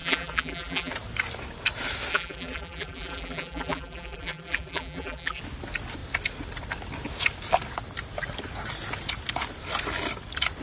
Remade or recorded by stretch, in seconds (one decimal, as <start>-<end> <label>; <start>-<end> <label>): 0.0-0.9 remade; 0.9-2.1 recorded; 2.1-5.4 remade; 5.4-10.6 recorded